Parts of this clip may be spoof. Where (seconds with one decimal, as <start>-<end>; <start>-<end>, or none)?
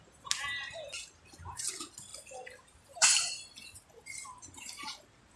2.1-5.4